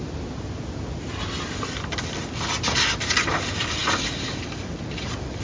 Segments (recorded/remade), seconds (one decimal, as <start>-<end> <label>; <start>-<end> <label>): 0.0-5.4 recorded